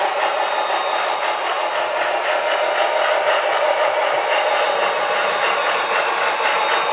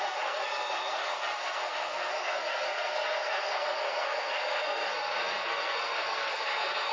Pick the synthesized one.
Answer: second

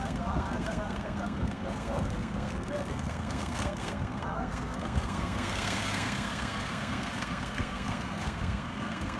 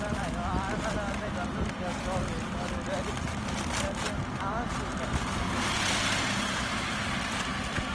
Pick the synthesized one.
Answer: first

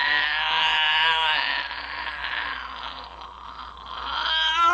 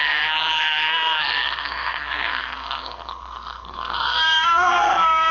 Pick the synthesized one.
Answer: second